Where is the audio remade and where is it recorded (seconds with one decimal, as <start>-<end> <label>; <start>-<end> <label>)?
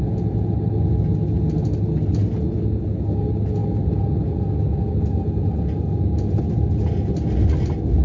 0.0-8.0 recorded